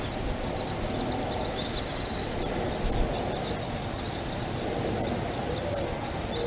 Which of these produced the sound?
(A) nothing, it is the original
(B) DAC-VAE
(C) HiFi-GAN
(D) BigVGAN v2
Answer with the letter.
A